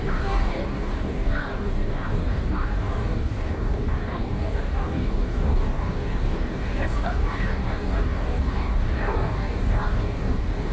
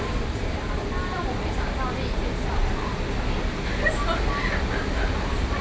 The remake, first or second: first